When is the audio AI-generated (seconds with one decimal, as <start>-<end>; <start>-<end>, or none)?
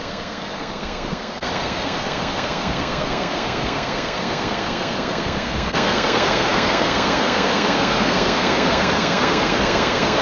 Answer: 0.0-10.2